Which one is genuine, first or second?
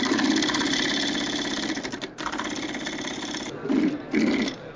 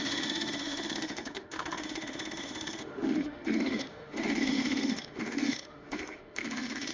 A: first